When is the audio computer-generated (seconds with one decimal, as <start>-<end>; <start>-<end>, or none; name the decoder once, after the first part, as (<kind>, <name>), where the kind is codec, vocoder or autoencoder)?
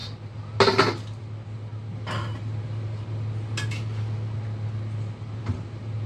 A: none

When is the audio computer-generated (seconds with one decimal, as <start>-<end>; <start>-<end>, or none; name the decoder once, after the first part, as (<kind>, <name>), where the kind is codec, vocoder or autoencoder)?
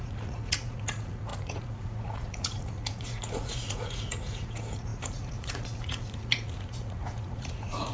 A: 0.0-7.9 (vocoder, Vocos)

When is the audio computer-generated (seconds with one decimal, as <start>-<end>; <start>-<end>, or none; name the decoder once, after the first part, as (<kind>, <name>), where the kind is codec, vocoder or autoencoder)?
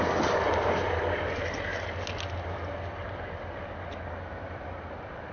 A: 0.0-1.7 (vocoder, BigVGAN v2); 4.1-5.3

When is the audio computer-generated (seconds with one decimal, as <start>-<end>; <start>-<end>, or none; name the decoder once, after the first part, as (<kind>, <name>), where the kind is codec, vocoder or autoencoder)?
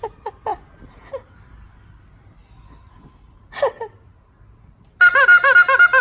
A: none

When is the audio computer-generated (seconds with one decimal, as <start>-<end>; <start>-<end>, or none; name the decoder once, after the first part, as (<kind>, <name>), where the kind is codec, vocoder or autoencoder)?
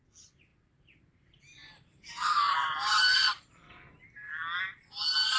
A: 0.5-3.7 (vocoder, BigVGAN v2)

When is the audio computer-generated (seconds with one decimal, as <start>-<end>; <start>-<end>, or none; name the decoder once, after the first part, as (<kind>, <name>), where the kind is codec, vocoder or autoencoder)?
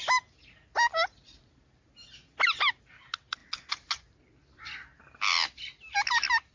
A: none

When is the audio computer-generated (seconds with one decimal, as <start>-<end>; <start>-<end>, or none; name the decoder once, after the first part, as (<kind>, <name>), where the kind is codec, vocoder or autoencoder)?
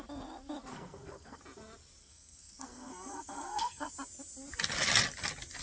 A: 0.7-1.4 (codec, SNAC); 2.0-3.9